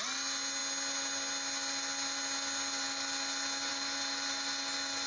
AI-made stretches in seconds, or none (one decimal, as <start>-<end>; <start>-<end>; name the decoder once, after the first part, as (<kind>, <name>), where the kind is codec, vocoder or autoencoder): none